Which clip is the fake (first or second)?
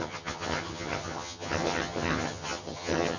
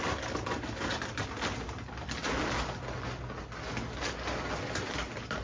first